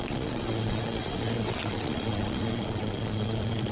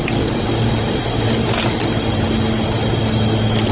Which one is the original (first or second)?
second